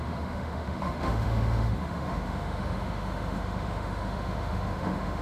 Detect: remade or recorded remade